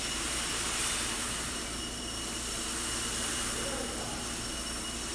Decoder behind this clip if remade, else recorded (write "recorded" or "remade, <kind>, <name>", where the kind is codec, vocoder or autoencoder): recorded